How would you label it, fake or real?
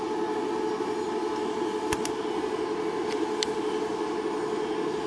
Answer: real